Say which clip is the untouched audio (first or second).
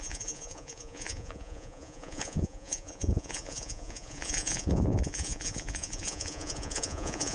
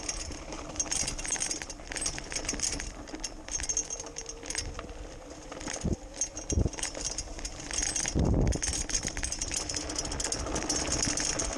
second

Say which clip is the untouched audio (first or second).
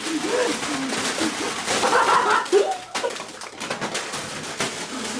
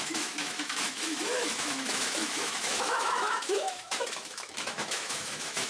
first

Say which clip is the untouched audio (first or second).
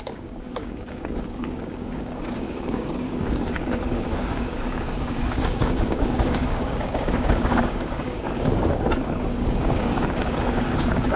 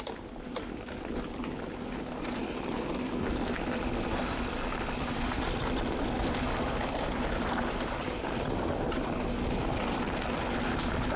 second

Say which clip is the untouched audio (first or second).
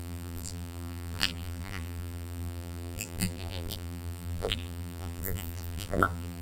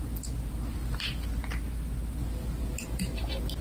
second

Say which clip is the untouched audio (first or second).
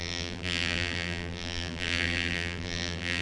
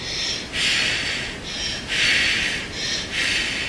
second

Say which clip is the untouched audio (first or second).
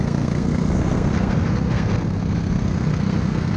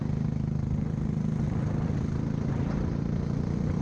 second